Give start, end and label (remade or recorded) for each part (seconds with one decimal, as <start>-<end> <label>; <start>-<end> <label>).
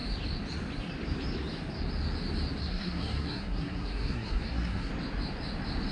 0.0-2.6 recorded; 2.6-4.9 remade; 4.9-5.9 recorded